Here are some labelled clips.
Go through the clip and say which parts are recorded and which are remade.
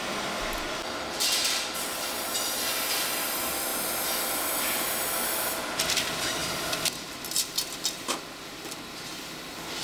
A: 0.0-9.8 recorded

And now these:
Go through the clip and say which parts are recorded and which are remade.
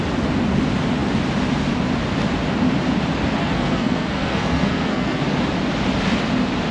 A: 0.0-3.4 recorded; 3.4-5.2 remade; 5.2-6.7 recorded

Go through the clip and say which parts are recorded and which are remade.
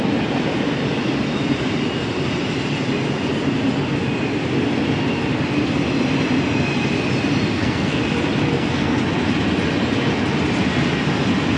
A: 0.0-7.5 recorded; 7.5-8.0 remade; 8.0-8.5 recorded; 8.5-9.0 remade; 9.0-11.6 recorded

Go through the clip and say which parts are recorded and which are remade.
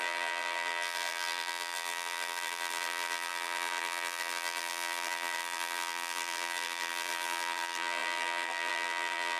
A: 0.0-9.4 remade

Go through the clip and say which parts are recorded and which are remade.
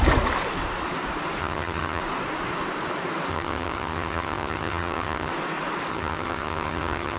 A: 0.0-1.4 recorded; 1.4-2.0 remade; 2.0-3.3 recorded; 3.3-5.3 remade; 5.3-5.9 recorded; 5.9-7.2 remade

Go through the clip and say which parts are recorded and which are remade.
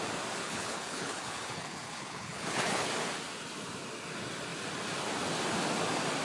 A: 0.0-0.4 recorded; 0.4-2.9 remade; 2.9-6.2 recorded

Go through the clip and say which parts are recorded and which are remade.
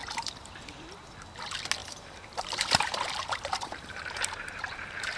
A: 0.0-1.2 remade; 1.2-1.8 recorded; 1.8-5.2 remade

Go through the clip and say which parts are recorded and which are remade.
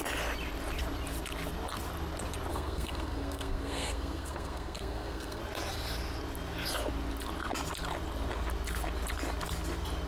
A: 0.0-2.5 recorded; 2.5-5.4 remade; 5.4-10.1 recorded